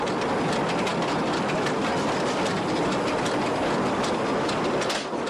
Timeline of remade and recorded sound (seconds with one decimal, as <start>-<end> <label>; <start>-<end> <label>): 0.0-5.3 recorded